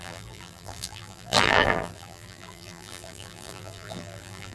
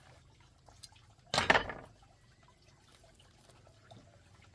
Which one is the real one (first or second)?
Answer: second